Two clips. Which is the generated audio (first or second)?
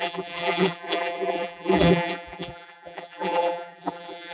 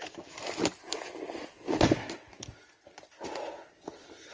first